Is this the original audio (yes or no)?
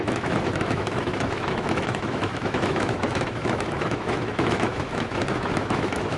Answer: no